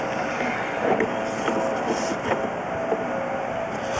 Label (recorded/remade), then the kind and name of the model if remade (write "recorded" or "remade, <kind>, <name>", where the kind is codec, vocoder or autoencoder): recorded